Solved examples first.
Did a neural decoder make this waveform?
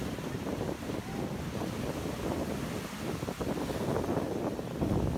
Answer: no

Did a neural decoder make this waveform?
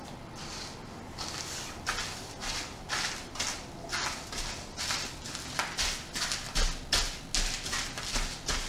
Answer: no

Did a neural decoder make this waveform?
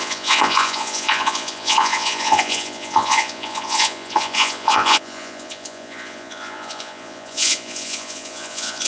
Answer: yes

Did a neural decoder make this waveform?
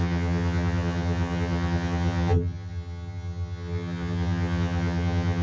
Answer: yes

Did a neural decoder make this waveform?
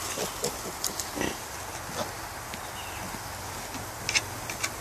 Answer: no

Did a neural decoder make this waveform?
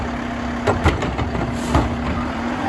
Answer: no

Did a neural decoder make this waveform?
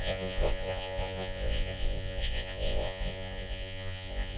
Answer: yes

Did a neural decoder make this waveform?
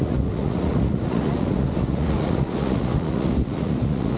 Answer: yes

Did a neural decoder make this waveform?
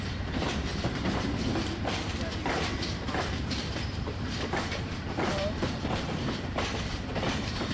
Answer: yes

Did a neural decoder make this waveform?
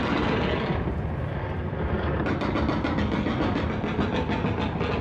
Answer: no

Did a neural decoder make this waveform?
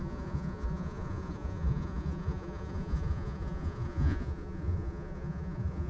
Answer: yes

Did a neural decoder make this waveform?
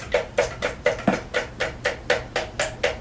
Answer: no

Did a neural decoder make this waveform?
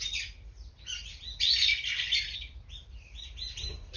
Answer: no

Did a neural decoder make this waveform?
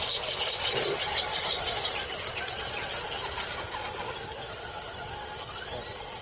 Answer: no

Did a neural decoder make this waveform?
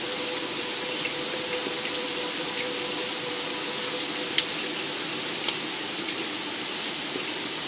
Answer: no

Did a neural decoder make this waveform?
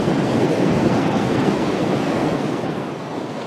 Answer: yes